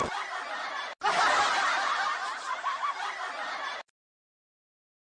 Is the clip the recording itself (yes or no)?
yes